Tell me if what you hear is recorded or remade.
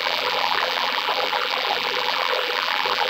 remade